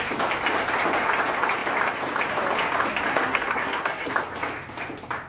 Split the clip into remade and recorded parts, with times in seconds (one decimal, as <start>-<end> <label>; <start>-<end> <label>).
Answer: 0.0-3.1 recorded; 3.1-4.1 remade; 4.1-5.3 recorded